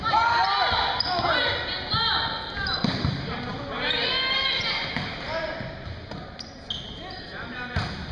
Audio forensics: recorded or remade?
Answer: recorded